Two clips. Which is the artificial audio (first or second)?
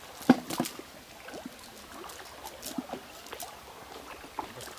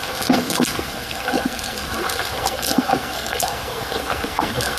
second